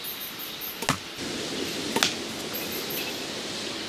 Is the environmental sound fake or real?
real